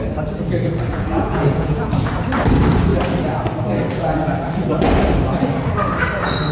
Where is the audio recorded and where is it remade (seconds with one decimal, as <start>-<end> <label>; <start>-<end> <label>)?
0.0-0.9 recorded; 0.9-1.9 remade; 1.9-6.5 recorded